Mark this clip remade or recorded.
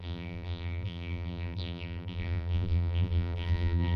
remade